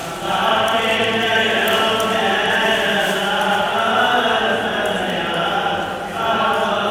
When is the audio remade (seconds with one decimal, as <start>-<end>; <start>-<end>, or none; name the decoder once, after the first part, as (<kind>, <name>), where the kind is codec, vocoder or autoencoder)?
0.0-1.8 (vocoder, BigVGAN v2)